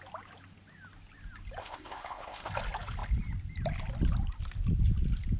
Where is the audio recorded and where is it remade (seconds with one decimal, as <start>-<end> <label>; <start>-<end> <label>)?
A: 0.0-1.6 recorded; 1.6-2.5 remade; 2.5-5.4 recorded